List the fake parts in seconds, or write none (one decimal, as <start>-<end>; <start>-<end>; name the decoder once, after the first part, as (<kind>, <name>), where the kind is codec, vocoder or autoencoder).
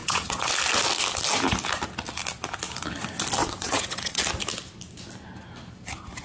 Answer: 0.0-0.5 (vocoder, WaveNeXt); 3.4-4.2